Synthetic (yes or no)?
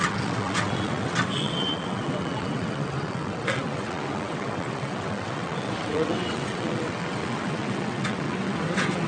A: yes